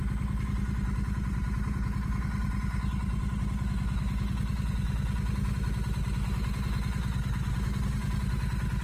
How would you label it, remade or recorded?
recorded